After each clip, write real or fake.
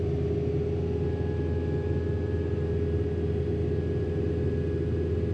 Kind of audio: real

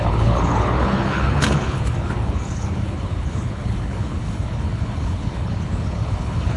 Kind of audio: fake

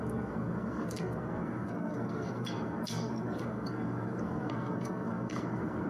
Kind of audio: fake